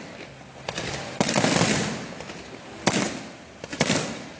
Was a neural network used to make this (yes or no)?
no